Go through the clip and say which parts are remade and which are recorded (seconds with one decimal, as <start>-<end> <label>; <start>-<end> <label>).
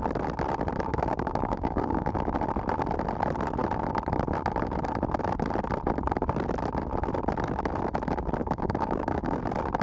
0.0-0.9 recorded; 0.9-2.4 remade; 2.4-8.4 recorded; 8.4-9.4 remade; 9.4-9.8 recorded